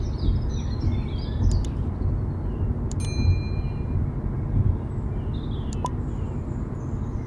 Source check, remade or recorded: recorded